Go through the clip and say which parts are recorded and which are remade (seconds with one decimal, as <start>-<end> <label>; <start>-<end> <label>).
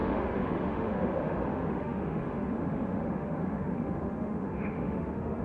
0.0-5.4 remade